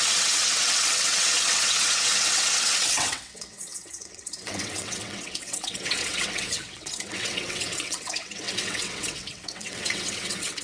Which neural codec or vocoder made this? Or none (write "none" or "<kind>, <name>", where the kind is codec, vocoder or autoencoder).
vocoder, WaveNeXt